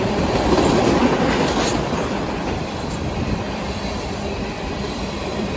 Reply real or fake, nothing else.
fake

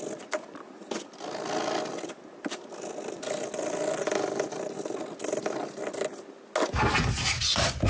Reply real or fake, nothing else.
real